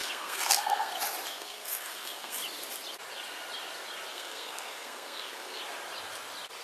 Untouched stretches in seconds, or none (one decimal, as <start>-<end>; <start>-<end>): 0.9-1.3; 2.4-4.1; 5.6-6.6